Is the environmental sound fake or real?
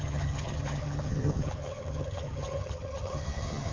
fake